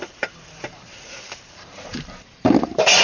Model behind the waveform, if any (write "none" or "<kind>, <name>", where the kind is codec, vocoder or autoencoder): vocoder, BigVGAN v2